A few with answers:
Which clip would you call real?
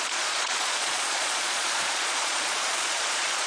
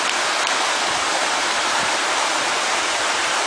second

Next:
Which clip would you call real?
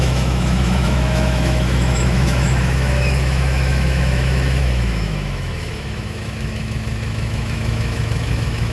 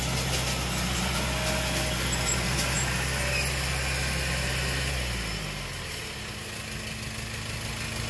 second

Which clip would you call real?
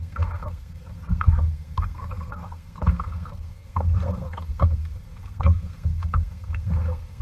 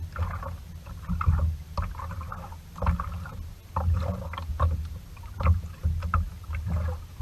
second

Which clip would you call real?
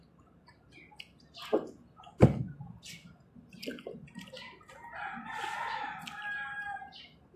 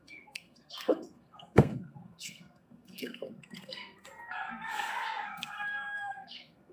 first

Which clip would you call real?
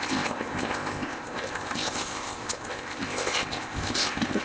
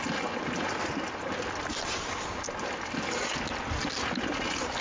second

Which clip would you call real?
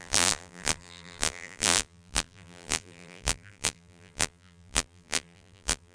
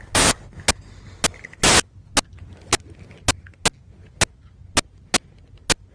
second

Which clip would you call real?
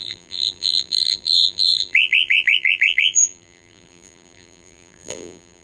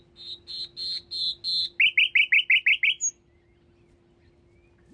second